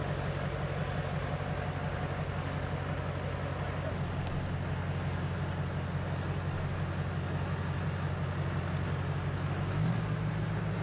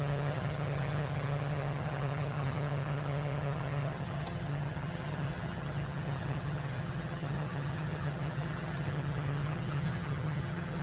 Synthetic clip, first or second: second